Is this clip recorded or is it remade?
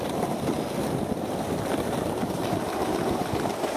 remade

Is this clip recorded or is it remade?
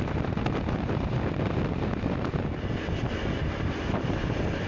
recorded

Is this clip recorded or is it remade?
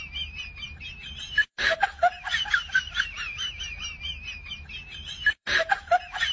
remade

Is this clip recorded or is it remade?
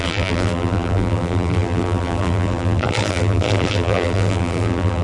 remade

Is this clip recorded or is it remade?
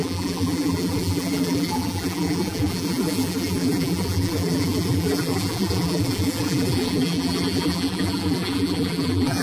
remade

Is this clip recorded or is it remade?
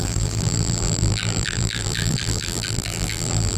remade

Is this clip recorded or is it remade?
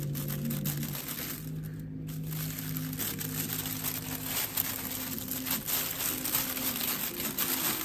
recorded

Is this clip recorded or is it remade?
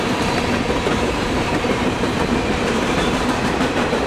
remade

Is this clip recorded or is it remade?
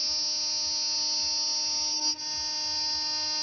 recorded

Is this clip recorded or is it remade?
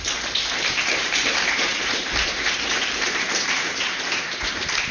remade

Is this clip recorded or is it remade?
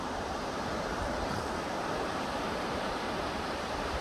remade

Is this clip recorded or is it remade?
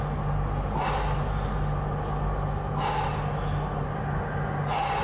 recorded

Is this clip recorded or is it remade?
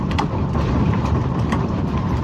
remade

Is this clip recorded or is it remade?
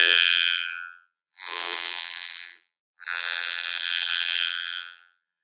remade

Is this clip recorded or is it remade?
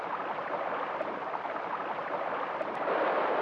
recorded